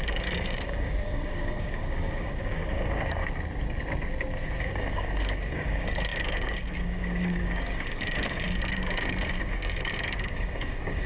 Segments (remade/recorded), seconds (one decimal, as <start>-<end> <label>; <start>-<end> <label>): 0.0-3.2 remade; 3.2-4.6 recorded; 4.6-11.1 remade